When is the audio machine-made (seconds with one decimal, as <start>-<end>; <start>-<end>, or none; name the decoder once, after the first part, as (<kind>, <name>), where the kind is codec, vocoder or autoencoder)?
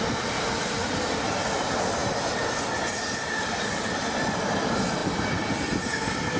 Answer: none